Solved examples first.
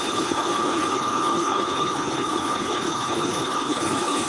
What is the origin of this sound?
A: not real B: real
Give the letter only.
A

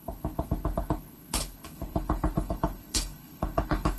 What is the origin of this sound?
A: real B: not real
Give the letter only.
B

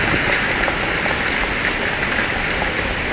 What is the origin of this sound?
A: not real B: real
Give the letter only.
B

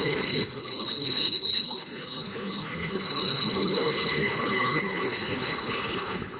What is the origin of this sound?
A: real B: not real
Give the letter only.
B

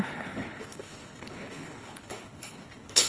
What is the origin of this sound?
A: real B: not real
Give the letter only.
B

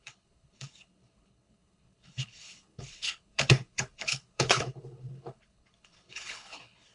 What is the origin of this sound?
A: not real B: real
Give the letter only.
A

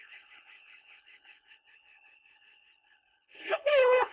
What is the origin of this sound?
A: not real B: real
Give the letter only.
A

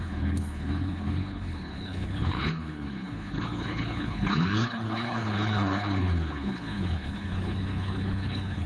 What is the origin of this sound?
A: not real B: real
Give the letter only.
A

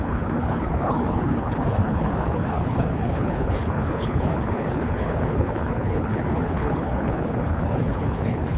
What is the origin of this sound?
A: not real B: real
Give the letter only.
A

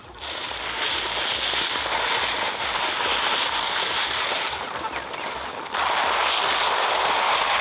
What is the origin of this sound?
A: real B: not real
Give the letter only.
A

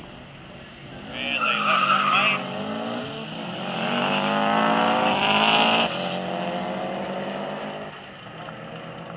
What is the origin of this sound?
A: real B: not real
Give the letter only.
A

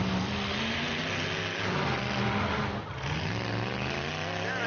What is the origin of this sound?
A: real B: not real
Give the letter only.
A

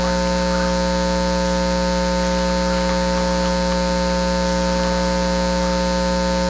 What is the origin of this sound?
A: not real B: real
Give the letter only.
B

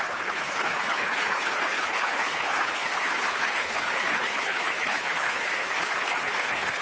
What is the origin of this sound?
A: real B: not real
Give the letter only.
B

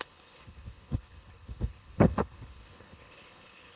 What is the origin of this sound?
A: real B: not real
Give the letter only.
B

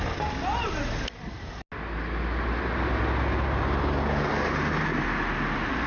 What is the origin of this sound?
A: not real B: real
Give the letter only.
B